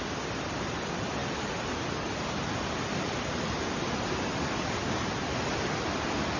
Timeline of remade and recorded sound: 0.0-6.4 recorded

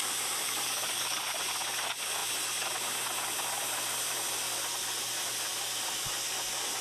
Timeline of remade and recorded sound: 0.0-0.4 recorded; 0.4-1.2 remade; 1.2-6.8 recorded

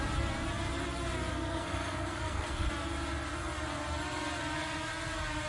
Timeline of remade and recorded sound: 0.0-1.3 recorded; 1.3-2.7 remade; 2.7-5.5 recorded